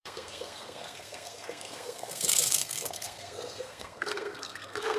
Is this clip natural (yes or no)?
no